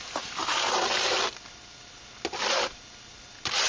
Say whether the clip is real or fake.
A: real